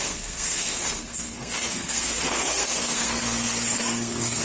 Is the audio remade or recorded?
remade